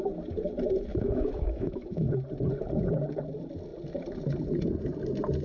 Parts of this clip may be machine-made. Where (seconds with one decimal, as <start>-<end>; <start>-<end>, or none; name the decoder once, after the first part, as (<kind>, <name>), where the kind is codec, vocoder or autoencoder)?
0.9-2.1 (autoencoder, DAC-VAE)